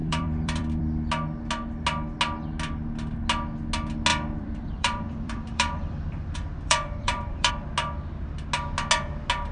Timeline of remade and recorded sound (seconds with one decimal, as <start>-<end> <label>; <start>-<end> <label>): 0.0-0.8 remade; 0.8-4.1 recorded; 4.1-7.5 remade; 7.5-9.5 recorded